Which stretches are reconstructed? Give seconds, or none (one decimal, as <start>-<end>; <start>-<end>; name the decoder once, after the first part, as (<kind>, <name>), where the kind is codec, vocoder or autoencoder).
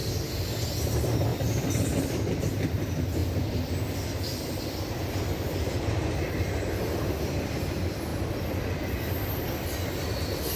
0.0-0.5 (vocoder, BigVGAN v2); 1.3-2.4; 3.2-6.9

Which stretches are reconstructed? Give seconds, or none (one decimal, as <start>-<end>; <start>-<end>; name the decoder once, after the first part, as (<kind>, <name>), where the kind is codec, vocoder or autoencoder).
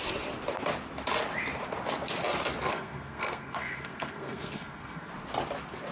2.7-5.1 (codec, SNAC)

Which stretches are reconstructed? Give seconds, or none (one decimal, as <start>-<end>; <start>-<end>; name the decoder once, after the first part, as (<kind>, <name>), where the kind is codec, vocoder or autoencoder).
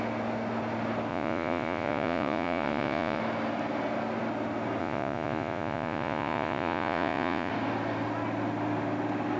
1.1-3.2 (vocoder, Vocos); 4.8-7.5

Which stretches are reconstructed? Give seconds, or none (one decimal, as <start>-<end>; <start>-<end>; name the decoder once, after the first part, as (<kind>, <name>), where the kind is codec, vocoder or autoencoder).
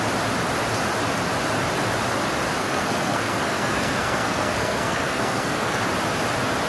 2.6-5.8 (codec, SNAC)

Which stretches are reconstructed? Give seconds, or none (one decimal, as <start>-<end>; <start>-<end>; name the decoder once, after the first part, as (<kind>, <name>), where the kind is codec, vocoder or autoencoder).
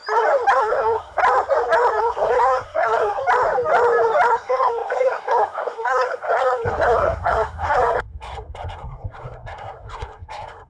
0.6-1.2 (codec, SNAC); 2.0-3.2; 4.3-10.7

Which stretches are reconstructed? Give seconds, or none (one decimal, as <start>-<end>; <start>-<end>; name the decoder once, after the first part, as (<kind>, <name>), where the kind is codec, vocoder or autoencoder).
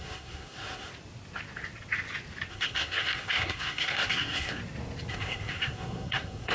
0.0-0.9 (codec, SNAC); 2.5-4.6; 5.1-6.5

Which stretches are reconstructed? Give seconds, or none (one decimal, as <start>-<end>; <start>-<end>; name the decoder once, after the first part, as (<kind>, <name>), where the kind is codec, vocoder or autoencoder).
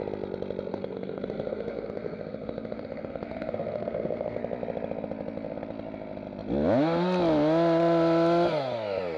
0.7-4.4 (codec, SNAC)